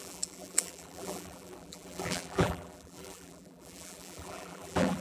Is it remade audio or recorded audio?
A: remade